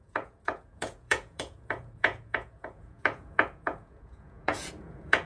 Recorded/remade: remade